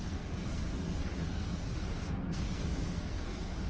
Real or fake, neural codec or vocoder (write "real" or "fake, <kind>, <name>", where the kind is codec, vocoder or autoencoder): fake, codec, SNAC